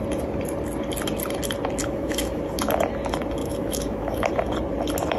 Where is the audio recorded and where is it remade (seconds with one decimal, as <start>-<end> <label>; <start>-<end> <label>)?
0.0-1.8 recorded; 1.8-2.4 remade; 2.4-3.4 recorded; 3.4-4.3 remade; 4.3-5.2 recorded